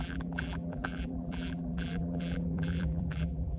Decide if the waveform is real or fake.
fake